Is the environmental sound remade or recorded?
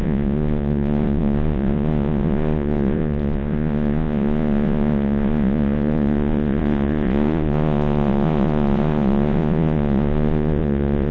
remade